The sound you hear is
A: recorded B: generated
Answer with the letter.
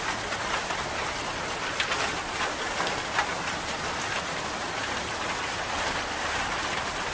A